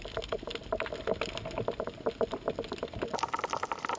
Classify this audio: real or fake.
real